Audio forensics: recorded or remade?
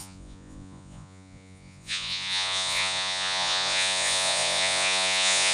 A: remade